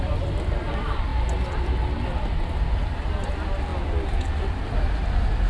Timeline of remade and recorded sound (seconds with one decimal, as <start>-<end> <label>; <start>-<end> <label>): 0.0-5.5 recorded

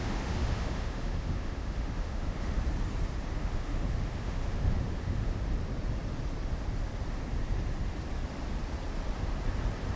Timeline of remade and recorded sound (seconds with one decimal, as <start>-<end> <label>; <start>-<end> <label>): 0.0-2.5 remade; 2.5-3.4 recorded; 3.4-5.4 remade; 5.4-10.0 recorded

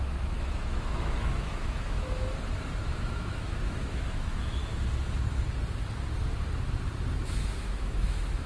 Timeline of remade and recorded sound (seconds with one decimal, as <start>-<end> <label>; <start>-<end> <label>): 0.0-2.3 remade; 2.3-2.8 recorded; 2.8-4.6 remade; 4.6-7.1 recorded; 7.1-8.5 remade

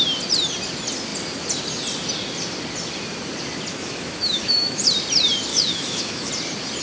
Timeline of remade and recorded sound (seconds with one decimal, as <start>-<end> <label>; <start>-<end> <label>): 0.0-3.7 recorded; 3.7-4.8 remade; 4.8-5.5 recorded; 5.5-6.3 remade; 6.3-6.8 recorded